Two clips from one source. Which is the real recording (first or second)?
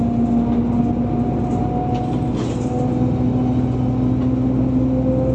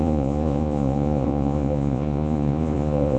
first